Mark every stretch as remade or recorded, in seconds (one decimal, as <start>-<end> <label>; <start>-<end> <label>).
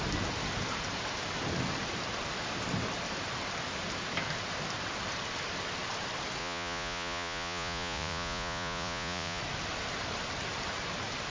0.0-6.4 recorded; 6.4-9.4 remade; 9.4-11.3 recorded